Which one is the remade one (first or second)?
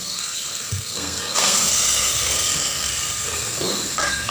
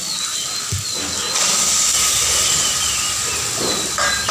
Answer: first